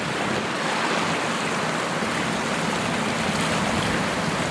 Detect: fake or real real